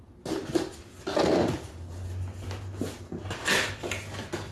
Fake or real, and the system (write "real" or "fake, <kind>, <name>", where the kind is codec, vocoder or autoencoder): real